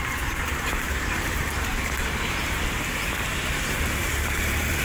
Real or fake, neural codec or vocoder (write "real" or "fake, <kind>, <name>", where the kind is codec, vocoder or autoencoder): fake, vocoder, BigVGAN v2